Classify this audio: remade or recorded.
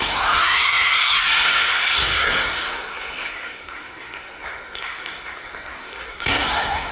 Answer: remade